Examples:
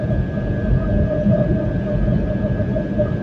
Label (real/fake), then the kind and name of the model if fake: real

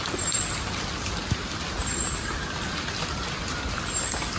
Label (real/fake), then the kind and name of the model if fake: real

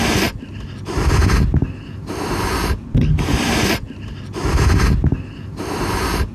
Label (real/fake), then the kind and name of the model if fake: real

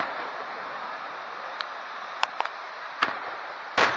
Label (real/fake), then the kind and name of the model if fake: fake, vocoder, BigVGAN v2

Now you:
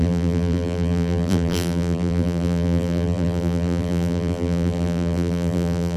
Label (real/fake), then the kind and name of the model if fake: fake, vocoder, BigVGAN v2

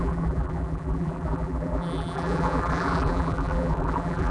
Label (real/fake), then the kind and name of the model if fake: fake, vocoder, BigVGAN v2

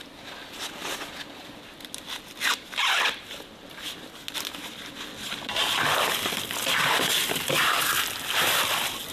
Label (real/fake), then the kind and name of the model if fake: real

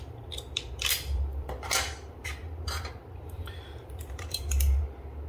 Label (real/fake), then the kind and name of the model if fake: fake, vocoder, BigVGAN v2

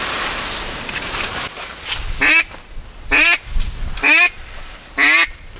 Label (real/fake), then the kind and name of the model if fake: real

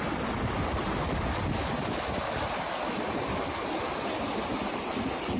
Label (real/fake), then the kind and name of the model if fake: real